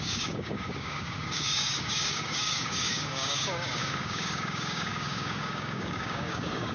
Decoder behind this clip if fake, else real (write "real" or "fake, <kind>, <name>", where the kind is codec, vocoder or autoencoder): fake, codec, DAC